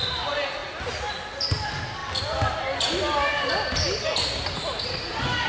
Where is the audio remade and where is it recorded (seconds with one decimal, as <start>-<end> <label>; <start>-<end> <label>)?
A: 0.0-5.5 recorded